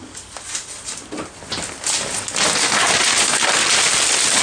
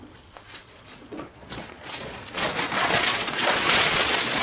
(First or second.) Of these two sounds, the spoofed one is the second